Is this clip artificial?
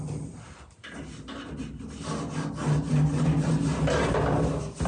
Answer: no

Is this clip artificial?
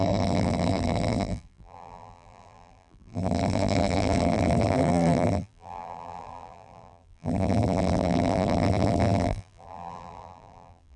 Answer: yes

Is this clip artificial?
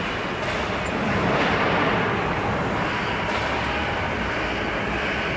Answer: no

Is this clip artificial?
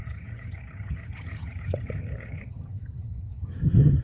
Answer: yes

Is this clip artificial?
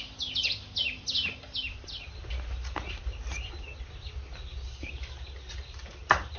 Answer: no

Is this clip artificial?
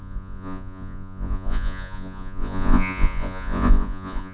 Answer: yes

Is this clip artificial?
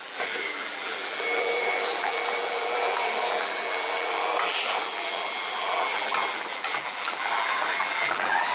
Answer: yes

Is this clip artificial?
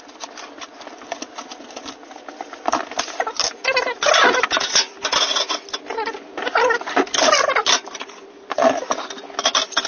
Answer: no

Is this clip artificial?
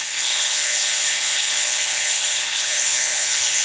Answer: yes